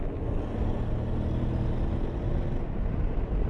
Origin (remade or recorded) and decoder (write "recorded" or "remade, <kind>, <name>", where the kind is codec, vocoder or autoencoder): recorded